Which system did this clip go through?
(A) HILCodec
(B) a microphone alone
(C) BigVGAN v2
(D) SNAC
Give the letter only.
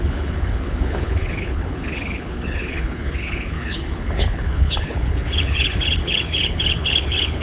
A